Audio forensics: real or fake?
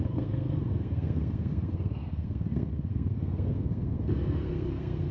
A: fake